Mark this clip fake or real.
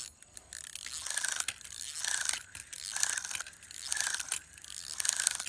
real